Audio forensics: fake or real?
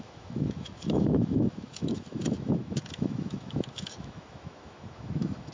fake